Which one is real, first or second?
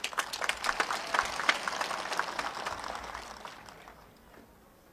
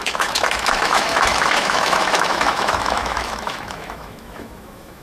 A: first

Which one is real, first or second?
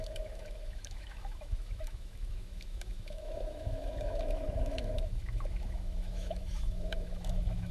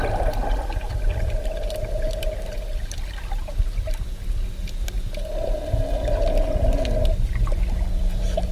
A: second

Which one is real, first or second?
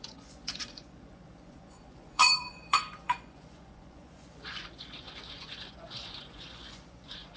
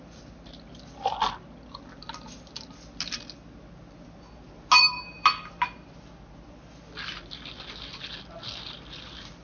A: second